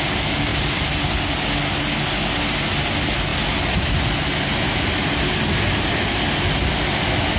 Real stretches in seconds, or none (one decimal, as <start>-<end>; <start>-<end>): 0.0-0.5; 1.0-7.4